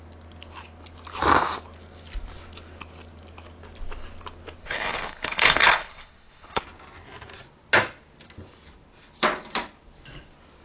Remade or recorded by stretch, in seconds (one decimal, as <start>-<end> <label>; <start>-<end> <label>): 0.0-4.6 recorded; 4.6-6.6 remade; 6.6-10.6 recorded